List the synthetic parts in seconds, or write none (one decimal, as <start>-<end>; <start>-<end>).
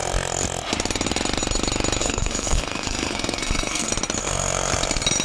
2.0-3.9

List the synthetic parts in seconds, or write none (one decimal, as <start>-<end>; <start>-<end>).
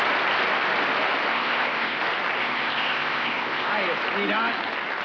1.3-2.0; 2.4-3.7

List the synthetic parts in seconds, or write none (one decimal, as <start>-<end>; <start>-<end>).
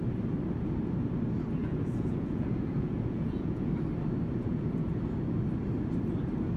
1.6-3.7; 4.5-5.0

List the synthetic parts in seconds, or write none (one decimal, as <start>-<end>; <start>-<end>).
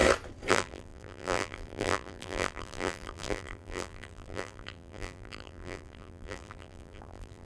0.5-7.4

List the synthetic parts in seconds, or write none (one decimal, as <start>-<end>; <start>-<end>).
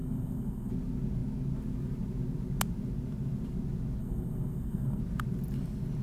0.0-0.7; 4.0-5.0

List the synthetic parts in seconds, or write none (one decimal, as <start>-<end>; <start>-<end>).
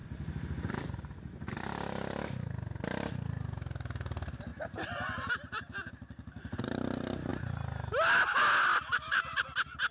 4.5-5.9; 8.9-9.4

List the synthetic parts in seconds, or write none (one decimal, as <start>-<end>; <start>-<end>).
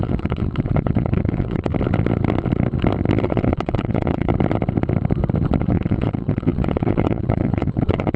0.0-1.7; 3.2-4.3; 5.6-8.2